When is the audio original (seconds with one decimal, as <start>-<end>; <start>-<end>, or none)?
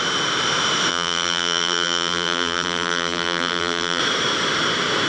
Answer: 0.0-0.9; 4.0-5.1